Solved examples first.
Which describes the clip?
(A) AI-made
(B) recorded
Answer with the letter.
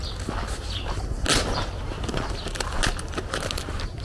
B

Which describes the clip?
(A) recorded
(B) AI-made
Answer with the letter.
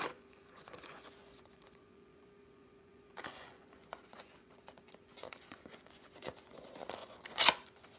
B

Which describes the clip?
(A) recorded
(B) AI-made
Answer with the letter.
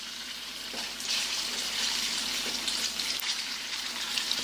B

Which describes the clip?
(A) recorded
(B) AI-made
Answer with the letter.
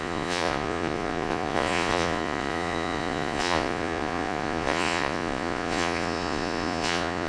B